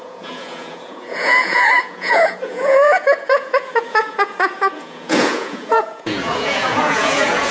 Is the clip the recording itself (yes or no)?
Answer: no